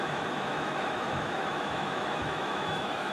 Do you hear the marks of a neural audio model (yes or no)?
yes